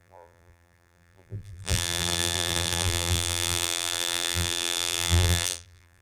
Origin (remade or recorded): remade